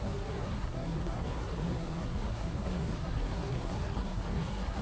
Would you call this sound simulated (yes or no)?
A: yes